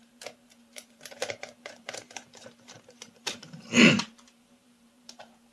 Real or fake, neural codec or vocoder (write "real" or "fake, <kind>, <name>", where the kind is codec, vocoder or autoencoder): fake, vocoder, BigVGAN v2